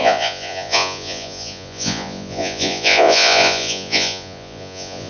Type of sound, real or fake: fake